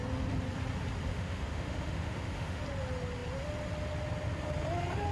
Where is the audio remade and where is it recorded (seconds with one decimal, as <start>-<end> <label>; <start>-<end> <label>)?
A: 0.0-1.1 recorded; 1.1-2.6 remade; 2.6-5.1 recorded